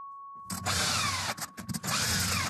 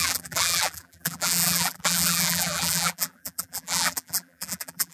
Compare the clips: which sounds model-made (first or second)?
second